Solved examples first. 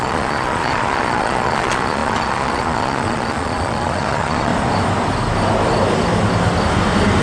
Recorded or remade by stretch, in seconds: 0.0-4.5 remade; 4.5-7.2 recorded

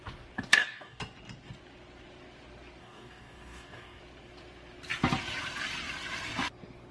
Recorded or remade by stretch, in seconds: 0.0-0.5 recorded; 0.5-1.0 remade; 1.0-2.8 recorded; 2.8-4.0 remade; 4.0-6.9 recorded

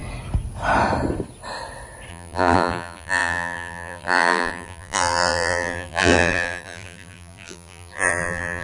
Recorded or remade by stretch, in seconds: 0.0-2.1 recorded; 2.1-8.6 remade